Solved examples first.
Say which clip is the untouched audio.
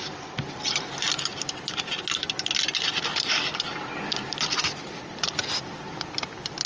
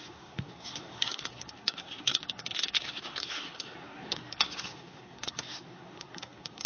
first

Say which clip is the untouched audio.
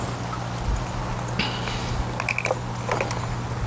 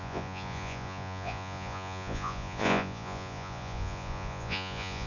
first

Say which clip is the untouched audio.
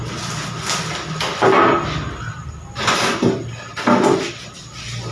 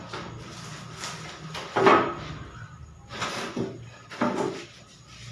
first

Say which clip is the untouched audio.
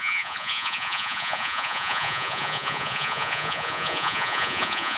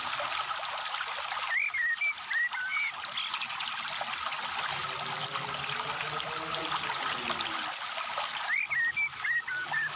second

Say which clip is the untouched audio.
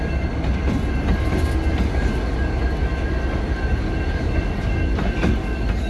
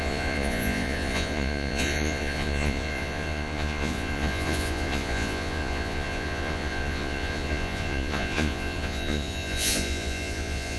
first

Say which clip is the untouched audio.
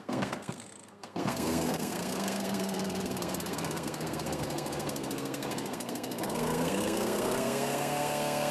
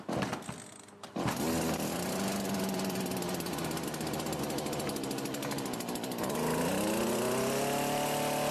second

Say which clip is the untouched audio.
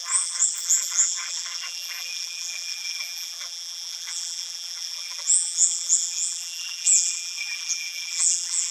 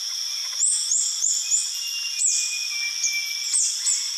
second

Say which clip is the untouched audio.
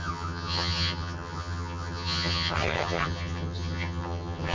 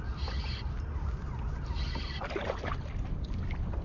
second